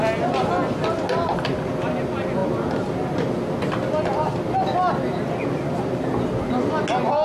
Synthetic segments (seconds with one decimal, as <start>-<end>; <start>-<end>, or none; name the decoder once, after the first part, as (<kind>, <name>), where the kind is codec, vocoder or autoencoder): none